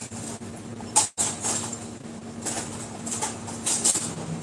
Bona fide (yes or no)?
yes